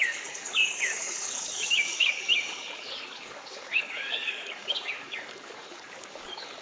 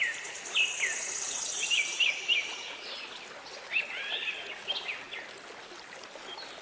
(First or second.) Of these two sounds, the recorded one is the second